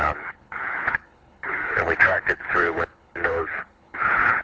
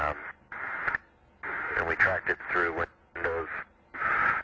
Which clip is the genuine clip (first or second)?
second